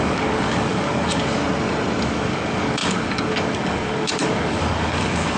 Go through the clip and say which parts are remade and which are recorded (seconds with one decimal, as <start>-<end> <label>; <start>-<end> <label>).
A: 0.0-1.4 remade; 1.4-2.0 recorded; 2.0-5.4 remade